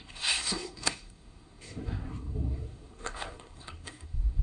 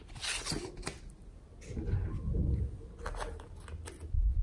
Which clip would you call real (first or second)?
second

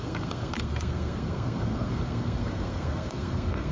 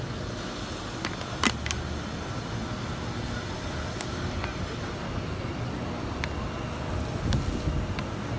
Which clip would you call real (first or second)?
second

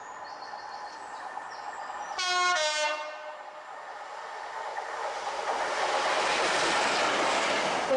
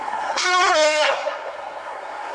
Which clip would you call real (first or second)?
first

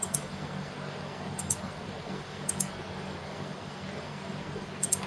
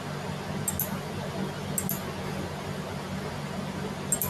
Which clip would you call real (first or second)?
second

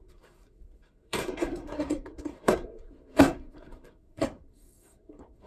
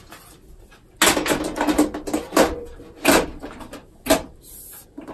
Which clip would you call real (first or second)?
second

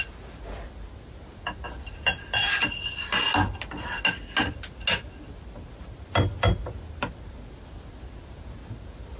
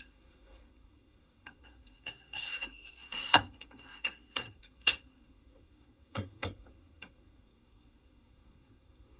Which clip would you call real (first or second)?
first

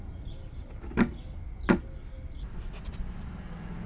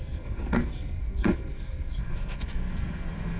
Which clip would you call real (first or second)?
first